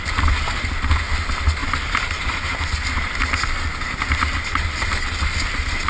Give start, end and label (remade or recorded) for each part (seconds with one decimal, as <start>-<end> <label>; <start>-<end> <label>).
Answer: 0.0-5.9 recorded